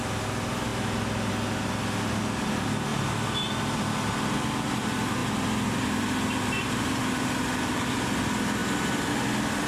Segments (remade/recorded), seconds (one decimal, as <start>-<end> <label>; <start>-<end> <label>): 0.0-2.9 recorded; 2.9-3.8 remade; 3.8-5.2 recorded; 5.2-7.0 remade; 7.0-9.7 recorded